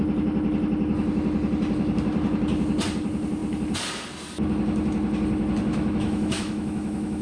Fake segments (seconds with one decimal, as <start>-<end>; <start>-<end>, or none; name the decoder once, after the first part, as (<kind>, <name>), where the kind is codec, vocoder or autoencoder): 5.7-7.2 (autoencoder, DAC-VAE)